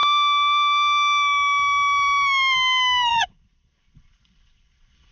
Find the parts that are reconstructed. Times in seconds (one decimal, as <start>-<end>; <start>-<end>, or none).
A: 3.1-5.1